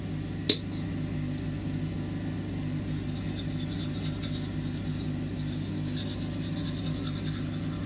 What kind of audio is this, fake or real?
real